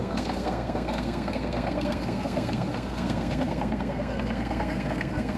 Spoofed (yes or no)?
yes